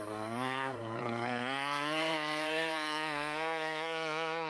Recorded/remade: remade